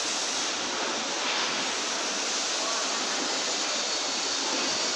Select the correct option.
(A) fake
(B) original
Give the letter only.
B